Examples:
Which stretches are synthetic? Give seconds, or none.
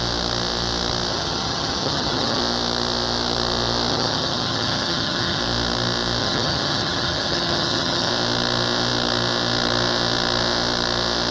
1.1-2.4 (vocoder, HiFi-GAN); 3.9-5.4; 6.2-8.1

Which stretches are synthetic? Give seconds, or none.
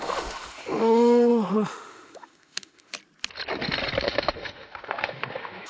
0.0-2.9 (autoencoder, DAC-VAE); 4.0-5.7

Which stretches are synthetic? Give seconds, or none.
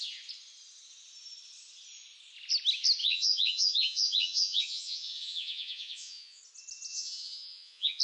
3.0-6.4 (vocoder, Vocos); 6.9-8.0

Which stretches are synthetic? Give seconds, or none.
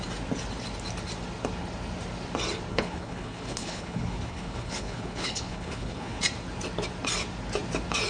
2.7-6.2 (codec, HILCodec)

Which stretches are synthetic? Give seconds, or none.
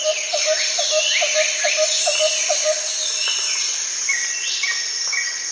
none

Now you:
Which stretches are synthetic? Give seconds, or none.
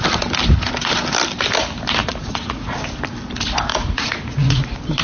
2.0-2.8 (vocoder, Vocos); 3.7-4.6